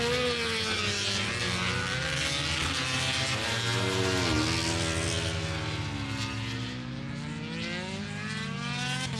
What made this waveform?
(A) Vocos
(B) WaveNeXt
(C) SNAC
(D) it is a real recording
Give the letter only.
D